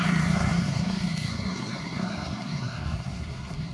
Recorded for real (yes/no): no